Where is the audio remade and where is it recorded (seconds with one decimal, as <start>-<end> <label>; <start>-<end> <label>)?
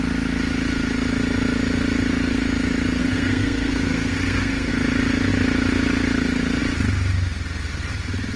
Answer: 0.0-3.0 recorded; 3.0-4.7 remade; 4.7-8.4 recorded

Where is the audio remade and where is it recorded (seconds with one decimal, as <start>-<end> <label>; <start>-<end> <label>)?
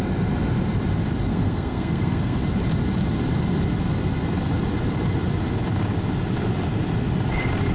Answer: 0.0-1.3 recorded; 1.3-2.4 remade; 2.4-7.7 recorded